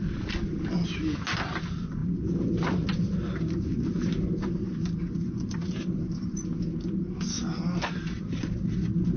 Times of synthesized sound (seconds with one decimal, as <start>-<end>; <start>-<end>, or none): none